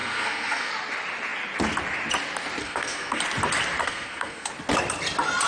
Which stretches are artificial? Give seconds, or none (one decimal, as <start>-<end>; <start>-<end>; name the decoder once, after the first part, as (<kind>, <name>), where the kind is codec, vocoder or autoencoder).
0.0-0.7 (codec, SNAC); 2.6-3.2; 3.8-4.5